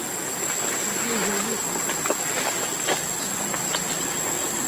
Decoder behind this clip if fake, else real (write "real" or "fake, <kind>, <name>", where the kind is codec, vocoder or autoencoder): real